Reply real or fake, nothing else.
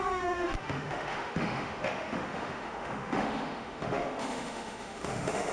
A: fake